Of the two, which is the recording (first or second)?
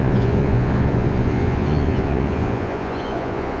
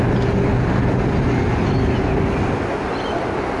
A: second